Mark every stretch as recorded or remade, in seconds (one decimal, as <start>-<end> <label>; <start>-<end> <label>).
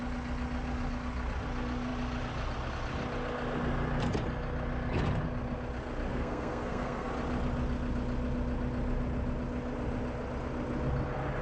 0.0-6.1 recorded; 6.1-7.1 remade; 7.1-11.4 recorded